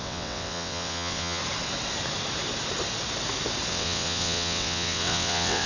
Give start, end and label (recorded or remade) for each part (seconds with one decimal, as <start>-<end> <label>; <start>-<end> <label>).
0.0-1.4 remade; 1.4-3.7 recorded; 3.7-5.7 remade